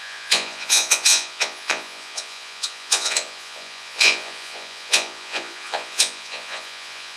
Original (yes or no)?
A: no